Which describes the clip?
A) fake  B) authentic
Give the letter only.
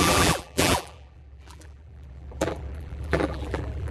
A